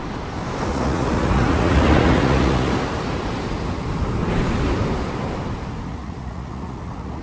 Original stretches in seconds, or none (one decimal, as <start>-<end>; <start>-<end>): 0.0-0.7; 2.7-5.9